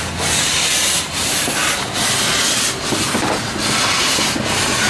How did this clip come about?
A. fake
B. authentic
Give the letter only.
B